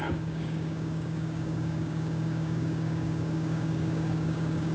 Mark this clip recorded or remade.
remade